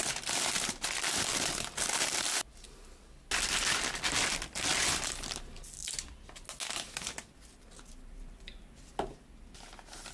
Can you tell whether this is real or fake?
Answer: real